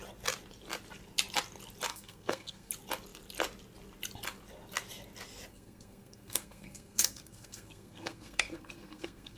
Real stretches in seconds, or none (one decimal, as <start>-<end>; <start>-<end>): 0.0-1.9; 2.7-5.5